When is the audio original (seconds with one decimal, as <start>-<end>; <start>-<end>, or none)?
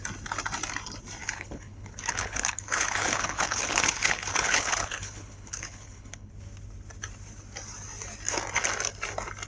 0.0-1.2; 6.3-9.5